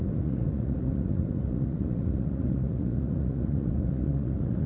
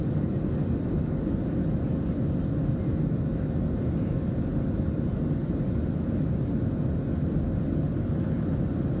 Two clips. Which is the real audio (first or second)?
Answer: second